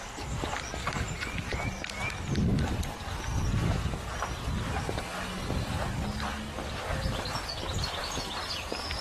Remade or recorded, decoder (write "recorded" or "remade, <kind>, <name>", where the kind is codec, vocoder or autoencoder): recorded